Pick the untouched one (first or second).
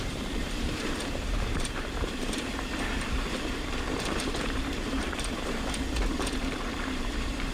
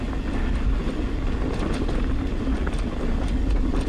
second